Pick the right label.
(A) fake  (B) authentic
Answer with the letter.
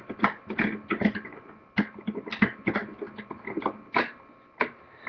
B